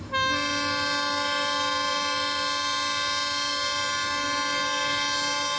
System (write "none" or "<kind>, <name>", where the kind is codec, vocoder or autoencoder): none